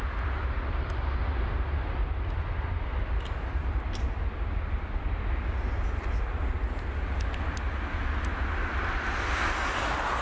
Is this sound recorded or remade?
recorded